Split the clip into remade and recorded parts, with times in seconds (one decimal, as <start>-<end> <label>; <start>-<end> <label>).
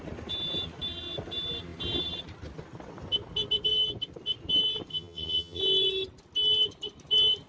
0.0-4.9 recorded; 4.9-5.6 remade; 5.6-7.5 recorded